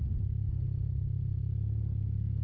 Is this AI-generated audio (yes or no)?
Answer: no